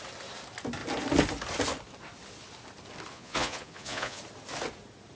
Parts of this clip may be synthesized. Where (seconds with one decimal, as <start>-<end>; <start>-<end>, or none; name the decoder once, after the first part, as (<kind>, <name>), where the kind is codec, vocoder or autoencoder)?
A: 3.1-4.2 (vocoder, Vocos)